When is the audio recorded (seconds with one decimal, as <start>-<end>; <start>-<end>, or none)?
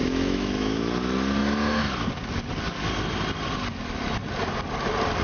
0.8-5.2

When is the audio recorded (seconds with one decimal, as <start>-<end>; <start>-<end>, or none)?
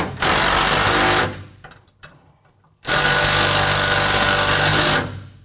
0.0-5.4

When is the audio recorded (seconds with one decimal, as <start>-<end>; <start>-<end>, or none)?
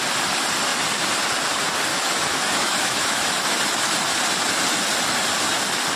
0.0-1.9; 3.6-6.0